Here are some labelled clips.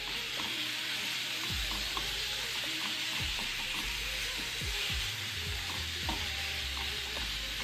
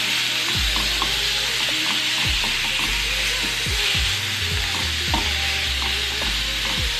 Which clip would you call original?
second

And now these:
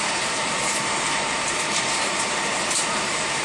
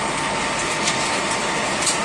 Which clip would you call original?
second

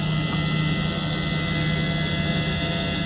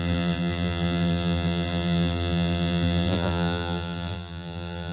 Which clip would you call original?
first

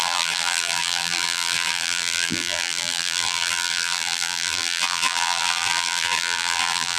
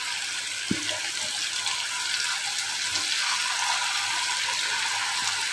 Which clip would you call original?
second